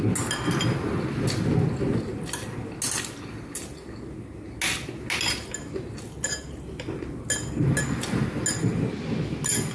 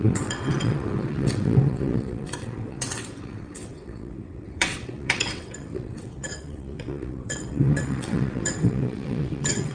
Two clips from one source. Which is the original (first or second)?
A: first